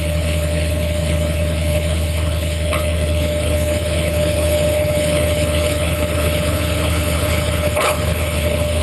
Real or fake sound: fake